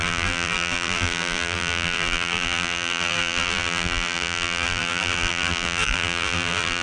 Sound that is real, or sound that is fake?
fake